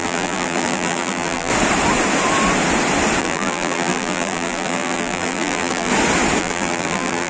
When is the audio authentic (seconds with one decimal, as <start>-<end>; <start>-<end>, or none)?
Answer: 1.5-3.2; 5.9-6.4